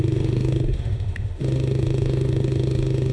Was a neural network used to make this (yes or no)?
yes